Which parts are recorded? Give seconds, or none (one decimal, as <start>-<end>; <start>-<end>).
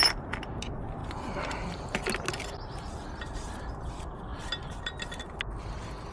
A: 0.0-6.1